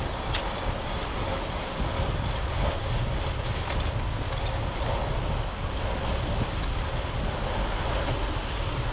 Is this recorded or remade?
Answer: recorded